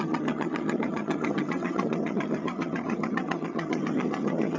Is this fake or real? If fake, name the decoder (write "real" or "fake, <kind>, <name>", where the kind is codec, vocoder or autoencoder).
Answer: fake, vocoder, HiFi-GAN